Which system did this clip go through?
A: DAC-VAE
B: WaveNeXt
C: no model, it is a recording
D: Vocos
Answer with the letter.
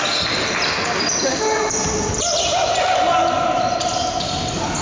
C